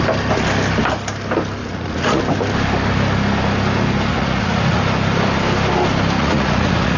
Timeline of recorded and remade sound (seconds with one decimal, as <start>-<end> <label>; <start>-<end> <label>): 0.0-1.6 recorded; 1.6-2.2 remade; 2.2-4.1 recorded; 4.1-4.8 remade; 4.8-6.2 recorded; 6.2-7.0 remade